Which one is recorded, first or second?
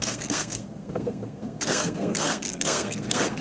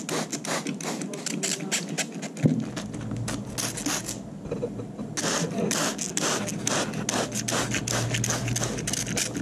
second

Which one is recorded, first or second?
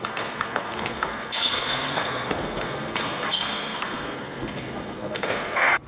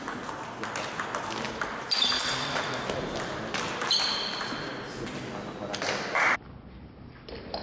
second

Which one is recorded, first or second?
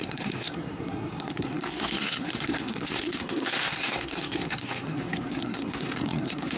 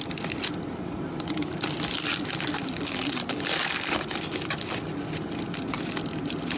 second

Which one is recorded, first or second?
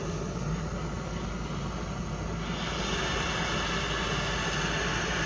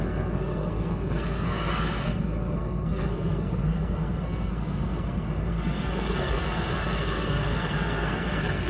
first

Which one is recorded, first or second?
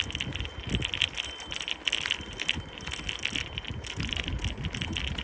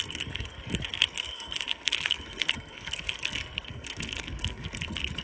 first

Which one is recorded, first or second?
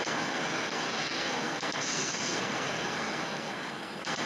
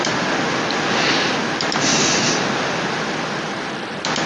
second